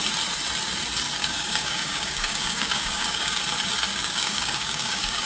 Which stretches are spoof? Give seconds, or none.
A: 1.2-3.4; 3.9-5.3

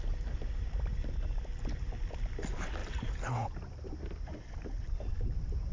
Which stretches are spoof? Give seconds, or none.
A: none